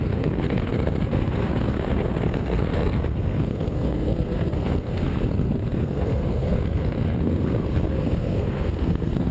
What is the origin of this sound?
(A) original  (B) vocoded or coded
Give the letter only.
B